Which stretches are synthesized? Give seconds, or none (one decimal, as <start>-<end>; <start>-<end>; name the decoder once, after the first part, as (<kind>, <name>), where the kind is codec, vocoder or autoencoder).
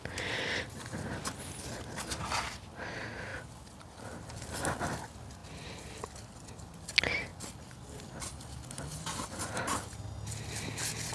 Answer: none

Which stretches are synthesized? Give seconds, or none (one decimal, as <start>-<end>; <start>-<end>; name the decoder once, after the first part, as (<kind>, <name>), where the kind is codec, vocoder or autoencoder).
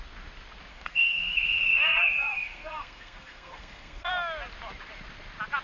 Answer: 0.7-4.1 (codec, SNAC)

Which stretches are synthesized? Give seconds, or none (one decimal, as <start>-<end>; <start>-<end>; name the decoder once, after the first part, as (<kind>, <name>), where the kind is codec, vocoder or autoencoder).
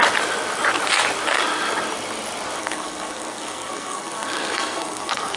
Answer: 2.6-5.4 (codec, SNAC)